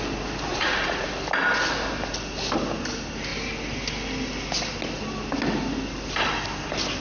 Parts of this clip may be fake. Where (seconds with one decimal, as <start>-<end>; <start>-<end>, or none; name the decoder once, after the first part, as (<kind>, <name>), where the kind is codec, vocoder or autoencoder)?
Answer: 0.5-1.1 (vocoder, Vocos)